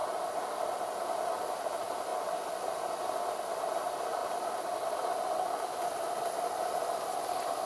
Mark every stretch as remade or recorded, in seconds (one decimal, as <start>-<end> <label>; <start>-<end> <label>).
0.0-7.7 recorded